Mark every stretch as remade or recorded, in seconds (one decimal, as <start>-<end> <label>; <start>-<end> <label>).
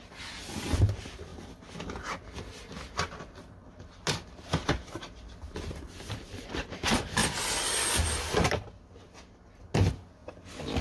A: 0.0-10.8 recorded